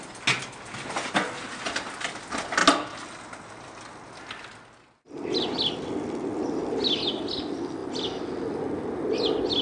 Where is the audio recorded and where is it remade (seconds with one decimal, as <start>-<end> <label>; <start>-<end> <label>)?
0.0-9.6 recorded